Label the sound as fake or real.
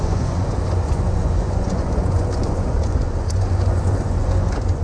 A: fake